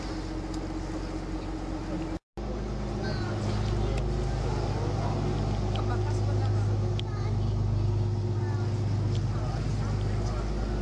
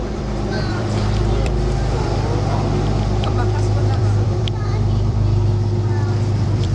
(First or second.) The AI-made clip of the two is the second